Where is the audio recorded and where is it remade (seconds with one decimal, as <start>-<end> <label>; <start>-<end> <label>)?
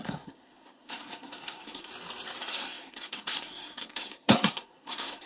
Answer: 0.0-1.9 remade; 1.9-2.4 recorded; 2.4-5.3 remade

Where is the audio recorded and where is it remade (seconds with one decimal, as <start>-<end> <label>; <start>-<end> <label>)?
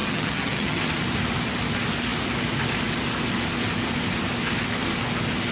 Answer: 0.0-0.8 remade; 0.8-5.5 recorded